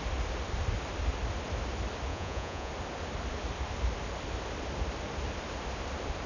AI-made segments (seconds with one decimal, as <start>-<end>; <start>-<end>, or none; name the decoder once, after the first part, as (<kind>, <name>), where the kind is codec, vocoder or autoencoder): 2.1-2.7 (vocoder, Vocos)